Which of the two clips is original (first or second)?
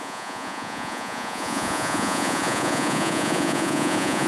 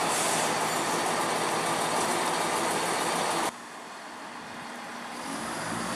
second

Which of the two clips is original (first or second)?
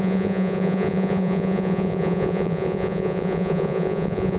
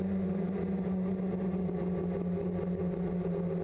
second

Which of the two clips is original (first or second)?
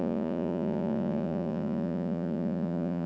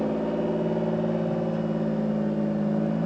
second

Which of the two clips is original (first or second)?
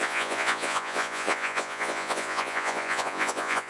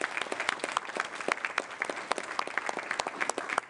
second